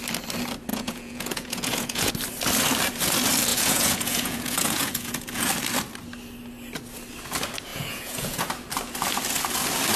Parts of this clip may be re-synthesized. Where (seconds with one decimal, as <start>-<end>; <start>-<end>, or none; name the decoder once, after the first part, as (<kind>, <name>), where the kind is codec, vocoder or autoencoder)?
0.7-2.1 (vocoder, Vocos); 3.5-5.5; 7.7-8.4